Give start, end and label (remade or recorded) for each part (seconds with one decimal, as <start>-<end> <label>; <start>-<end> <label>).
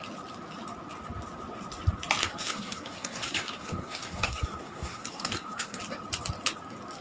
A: 0.0-2.2 recorded; 2.2-5.8 remade; 5.8-7.0 recorded